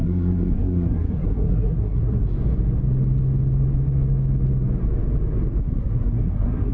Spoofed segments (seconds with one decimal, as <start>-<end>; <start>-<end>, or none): 0.0-2.2; 5.6-6.7